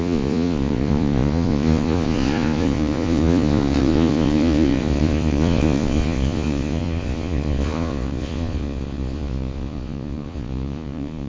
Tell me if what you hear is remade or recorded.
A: remade